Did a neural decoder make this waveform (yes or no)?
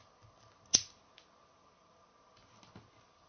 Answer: no